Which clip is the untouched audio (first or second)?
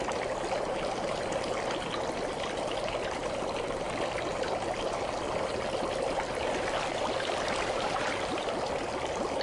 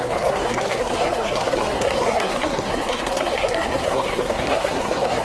first